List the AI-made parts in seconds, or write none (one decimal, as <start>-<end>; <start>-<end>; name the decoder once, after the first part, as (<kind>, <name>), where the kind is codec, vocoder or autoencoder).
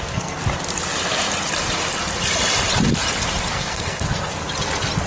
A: 0.0-0.4 (codec, SNAC); 3.5-4.4